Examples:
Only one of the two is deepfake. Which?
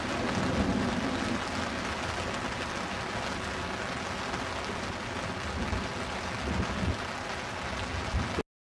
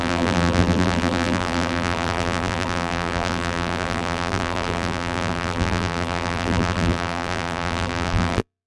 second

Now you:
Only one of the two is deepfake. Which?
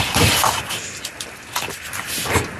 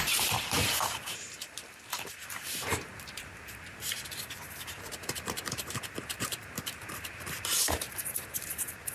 second